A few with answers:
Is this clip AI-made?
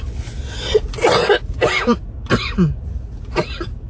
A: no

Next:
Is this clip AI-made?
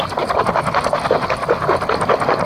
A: no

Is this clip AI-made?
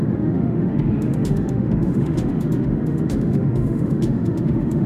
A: yes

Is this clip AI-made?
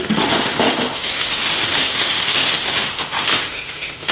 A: yes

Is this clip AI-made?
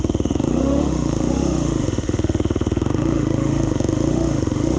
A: yes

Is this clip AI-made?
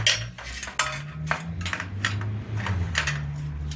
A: no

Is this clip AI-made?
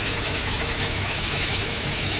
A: yes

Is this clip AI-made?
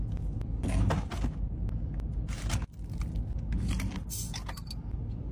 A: no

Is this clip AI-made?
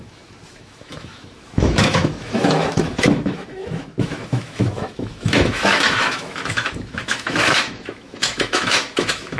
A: yes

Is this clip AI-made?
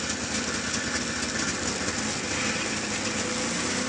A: no